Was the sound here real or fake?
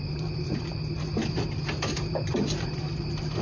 fake